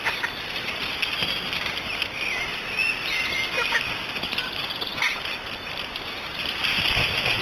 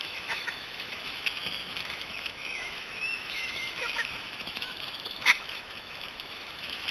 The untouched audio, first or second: first